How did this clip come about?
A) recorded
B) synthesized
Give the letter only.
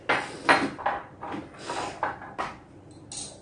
A